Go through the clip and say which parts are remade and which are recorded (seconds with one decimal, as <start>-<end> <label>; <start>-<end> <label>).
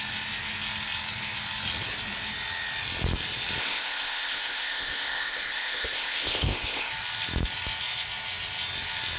0.0-3.6 recorded; 3.6-6.9 remade; 6.9-9.2 recorded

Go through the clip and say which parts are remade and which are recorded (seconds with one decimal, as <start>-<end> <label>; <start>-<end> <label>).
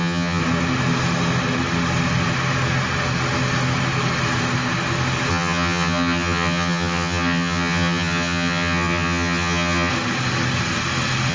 0.0-0.4 remade; 0.4-5.3 recorded; 5.3-9.9 remade; 9.9-11.3 recorded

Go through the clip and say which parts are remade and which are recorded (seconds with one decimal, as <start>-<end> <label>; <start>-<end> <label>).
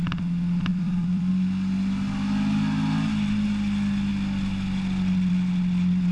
0.0-0.7 recorded; 0.7-1.3 remade; 1.3-6.1 recorded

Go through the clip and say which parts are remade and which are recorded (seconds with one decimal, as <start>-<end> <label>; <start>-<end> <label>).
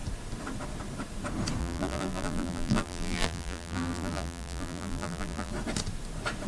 0.0-1.6 recorded; 1.6-5.5 remade; 5.5-6.5 recorded